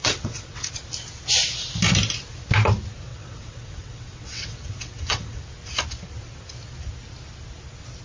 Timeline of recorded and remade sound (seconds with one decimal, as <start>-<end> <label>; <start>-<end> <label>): 0.0-0.7 remade; 0.7-3.1 recorded; 3.1-5.4 remade; 5.4-8.0 recorded